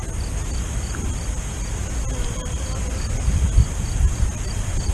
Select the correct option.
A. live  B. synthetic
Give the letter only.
A